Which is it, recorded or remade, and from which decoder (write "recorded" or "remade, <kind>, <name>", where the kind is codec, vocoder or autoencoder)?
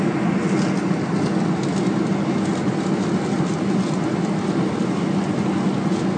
recorded